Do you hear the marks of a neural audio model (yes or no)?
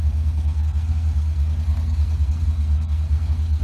yes